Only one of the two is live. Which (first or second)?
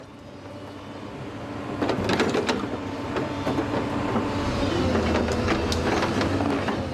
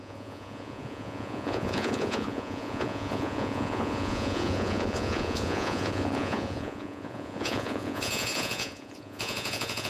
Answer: first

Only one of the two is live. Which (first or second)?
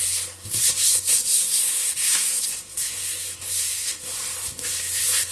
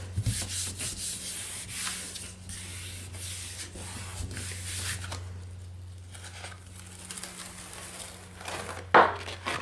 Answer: second